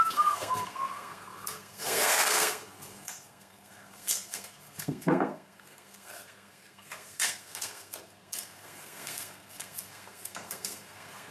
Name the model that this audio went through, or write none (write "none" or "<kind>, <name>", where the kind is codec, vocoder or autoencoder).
codec, SNAC